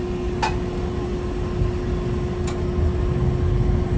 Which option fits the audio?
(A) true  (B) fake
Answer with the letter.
A